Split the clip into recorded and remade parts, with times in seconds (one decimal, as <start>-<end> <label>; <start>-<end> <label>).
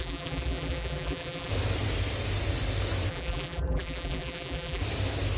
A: 0.0-1.5 remade; 1.5-3.1 recorded; 3.1-4.8 remade; 4.8-5.4 recorded